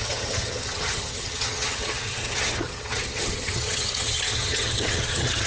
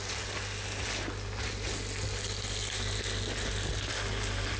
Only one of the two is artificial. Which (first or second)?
first